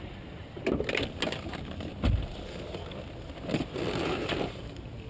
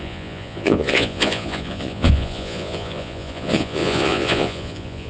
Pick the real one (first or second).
first